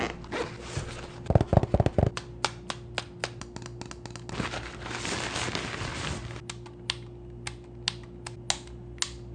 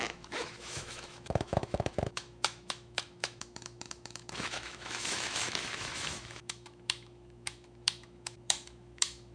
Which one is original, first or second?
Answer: first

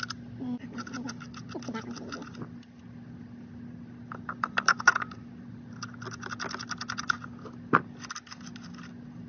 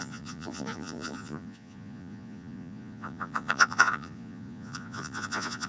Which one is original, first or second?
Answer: first